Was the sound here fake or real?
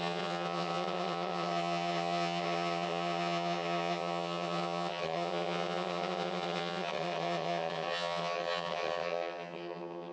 fake